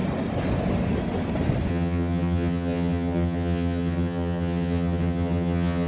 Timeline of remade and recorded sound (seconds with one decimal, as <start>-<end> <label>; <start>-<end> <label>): 0.0-1.7 recorded; 1.7-5.9 remade